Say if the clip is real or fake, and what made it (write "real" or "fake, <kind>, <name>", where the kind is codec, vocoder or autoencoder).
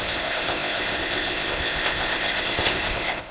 fake, codec, ZipCodec